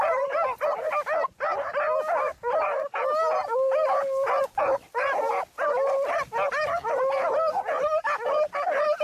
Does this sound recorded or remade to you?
recorded